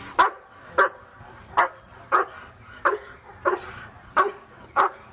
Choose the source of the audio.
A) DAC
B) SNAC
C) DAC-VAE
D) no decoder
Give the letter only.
D